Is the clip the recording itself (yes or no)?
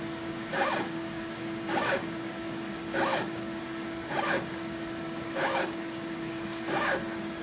no